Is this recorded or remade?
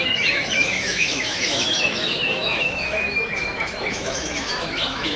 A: remade